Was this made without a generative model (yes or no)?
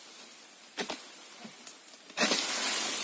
yes